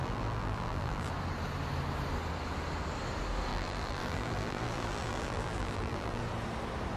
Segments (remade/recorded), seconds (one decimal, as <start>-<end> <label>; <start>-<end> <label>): 0.0-1.1 remade; 1.1-3.5 recorded; 3.5-6.2 remade; 6.2-7.0 recorded